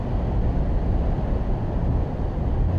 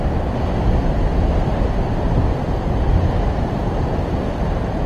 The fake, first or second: second